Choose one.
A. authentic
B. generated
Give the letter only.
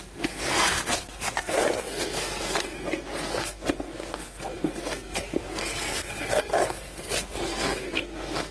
B